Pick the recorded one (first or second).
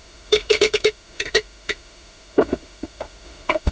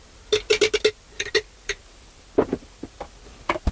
second